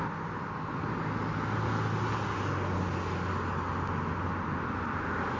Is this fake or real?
real